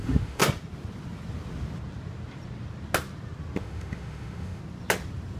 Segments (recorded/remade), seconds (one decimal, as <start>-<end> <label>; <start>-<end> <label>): 0.0-0.4 remade; 0.4-3.6 recorded; 3.6-4.6 remade; 4.6-5.4 recorded